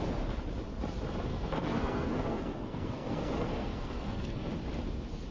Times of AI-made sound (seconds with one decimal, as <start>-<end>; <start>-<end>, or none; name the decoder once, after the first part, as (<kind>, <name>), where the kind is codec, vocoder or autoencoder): 1.3-4.5 (codec, SNAC)